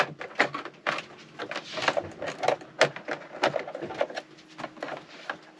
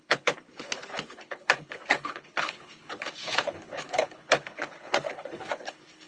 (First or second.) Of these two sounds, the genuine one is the first